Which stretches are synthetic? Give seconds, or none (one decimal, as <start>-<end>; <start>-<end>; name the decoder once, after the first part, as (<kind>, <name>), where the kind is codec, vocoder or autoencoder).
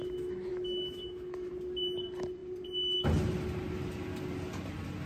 0.5-1.5 (autoencoder, DAC-VAE)